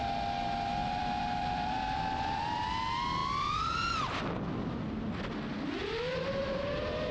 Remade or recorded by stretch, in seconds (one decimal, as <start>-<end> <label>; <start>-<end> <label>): 0.0-0.8 recorded; 0.8-2.4 remade; 2.4-5.8 recorded; 5.8-6.4 remade; 6.4-7.1 recorded